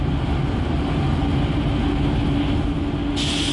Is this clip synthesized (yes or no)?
no